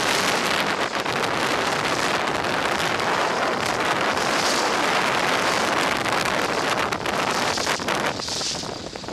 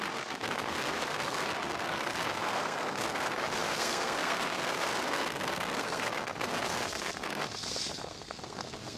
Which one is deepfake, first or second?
second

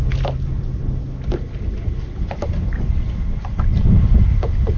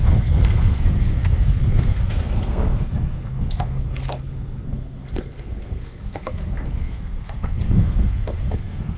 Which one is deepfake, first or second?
second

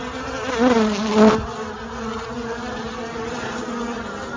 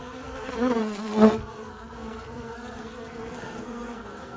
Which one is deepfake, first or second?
second